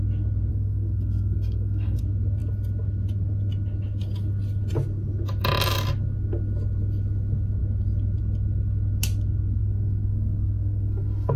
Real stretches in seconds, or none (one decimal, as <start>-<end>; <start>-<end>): 0.0-0.5; 2.0-9.6

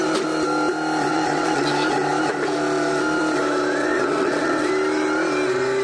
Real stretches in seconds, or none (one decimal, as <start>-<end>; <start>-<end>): 0.0-1.1; 1.7-3.8; 4.7-5.8

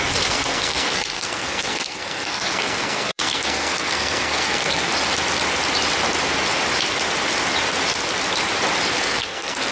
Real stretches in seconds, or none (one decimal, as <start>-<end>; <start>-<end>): 4.9-9.0

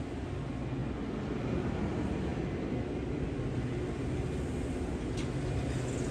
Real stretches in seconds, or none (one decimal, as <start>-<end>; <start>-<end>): 0.0-6.1

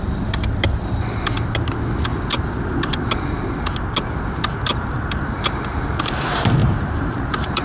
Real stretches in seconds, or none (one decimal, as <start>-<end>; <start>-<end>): 0.0-6.6

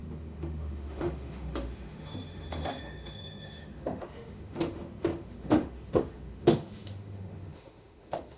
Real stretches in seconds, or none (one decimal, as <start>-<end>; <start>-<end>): none